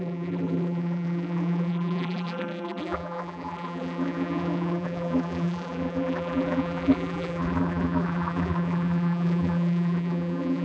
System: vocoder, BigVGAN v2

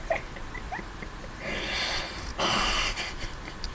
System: none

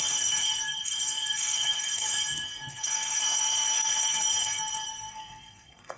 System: codec, SNAC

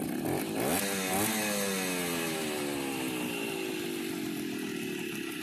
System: none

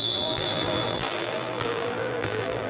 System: vocoder, BigVGAN v2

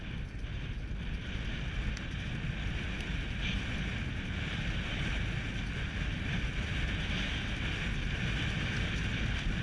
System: none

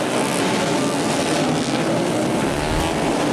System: none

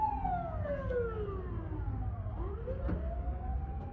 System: none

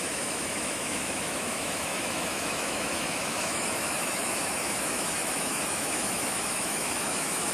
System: autoencoder, DAC-VAE